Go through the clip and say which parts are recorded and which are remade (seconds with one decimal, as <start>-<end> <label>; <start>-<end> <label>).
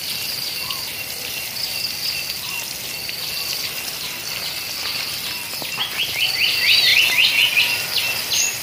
0.0-8.6 recorded